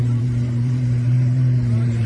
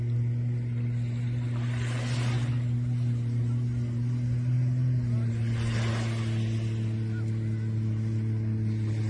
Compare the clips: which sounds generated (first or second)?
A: first